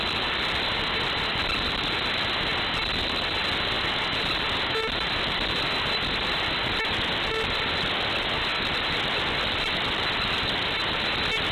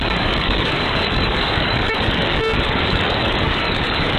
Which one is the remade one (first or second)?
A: second